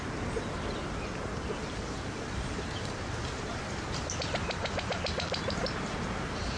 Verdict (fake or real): fake